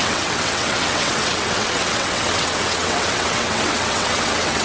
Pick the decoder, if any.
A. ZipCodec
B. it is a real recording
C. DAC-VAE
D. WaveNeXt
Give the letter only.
D